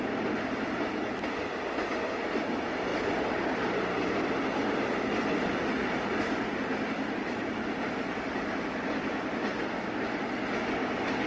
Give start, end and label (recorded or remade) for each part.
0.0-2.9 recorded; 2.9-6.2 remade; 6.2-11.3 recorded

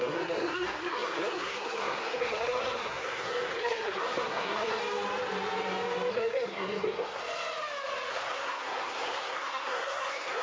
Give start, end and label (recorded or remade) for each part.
0.0-4.8 remade; 4.8-6.1 recorded; 6.1-7.2 remade; 7.2-8.1 recorded; 8.1-10.4 remade

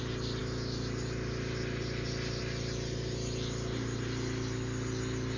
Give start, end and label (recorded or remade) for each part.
0.0-5.4 recorded

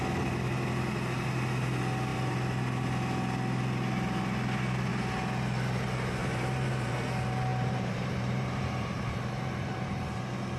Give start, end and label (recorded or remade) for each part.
0.0-6.2 recorded; 6.2-6.9 remade; 6.9-7.5 recorded; 7.5-10.2 remade; 10.2-10.6 recorded